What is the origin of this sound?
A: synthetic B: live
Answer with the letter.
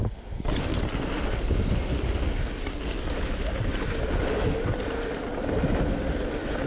B